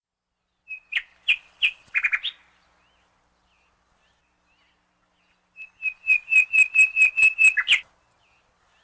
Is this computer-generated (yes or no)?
no